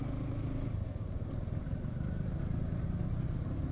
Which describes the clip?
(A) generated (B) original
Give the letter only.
B